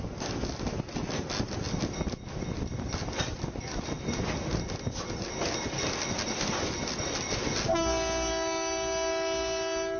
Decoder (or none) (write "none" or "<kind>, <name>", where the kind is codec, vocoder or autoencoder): none